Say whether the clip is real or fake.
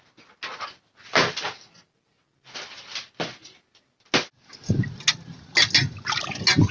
real